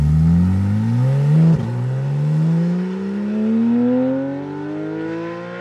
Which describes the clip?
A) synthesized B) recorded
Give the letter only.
B